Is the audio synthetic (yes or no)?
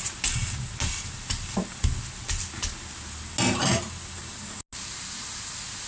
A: no